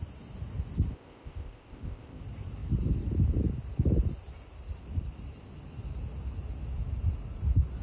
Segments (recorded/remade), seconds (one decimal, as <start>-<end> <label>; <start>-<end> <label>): 0.0-0.9 recorded; 0.9-2.2 remade; 2.2-7.8 recorded